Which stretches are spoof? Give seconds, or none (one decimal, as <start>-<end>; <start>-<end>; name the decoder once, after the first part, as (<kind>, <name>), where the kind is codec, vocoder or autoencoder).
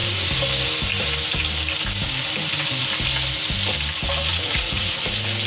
4.3-5.0 (vocoder, Vocos)